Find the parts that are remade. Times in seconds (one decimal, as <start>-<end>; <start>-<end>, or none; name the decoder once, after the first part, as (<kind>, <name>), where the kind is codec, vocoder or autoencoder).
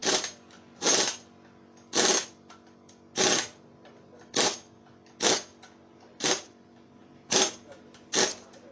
none